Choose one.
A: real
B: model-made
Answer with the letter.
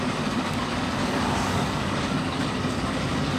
B